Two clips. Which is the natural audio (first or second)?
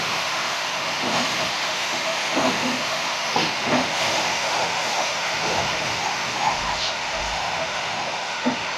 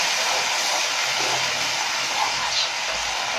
second